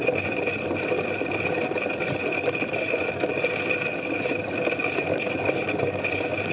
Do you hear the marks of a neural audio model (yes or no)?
no